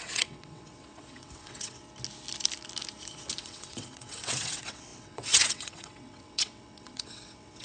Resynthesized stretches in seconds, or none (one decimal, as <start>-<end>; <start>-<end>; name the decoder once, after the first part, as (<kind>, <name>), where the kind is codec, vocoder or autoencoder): 0.0-1.8 (vocoder, WaveNeXt); 3.4-7.6

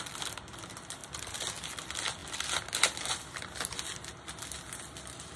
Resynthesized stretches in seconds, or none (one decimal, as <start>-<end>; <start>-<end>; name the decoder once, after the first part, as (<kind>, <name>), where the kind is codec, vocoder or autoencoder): none

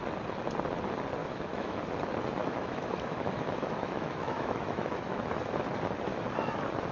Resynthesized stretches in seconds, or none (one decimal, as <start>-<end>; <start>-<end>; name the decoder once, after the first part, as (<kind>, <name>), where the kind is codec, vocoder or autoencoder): 1.2-1.8 (autoencoder, DAC-VAE); 2.4-5.2